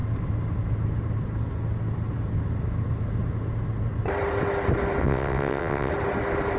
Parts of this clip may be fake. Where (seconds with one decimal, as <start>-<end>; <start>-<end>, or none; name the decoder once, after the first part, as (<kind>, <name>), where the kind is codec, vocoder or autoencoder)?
5.0-5.9 (vocoder, WaveNeXt)